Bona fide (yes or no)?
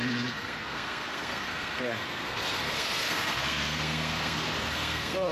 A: no